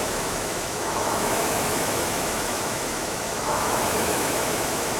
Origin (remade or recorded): remade